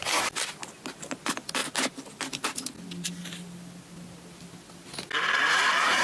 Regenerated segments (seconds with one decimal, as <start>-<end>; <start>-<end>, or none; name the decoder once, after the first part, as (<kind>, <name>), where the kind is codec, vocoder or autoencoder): none